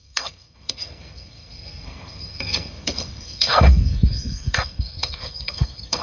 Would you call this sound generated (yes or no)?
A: yes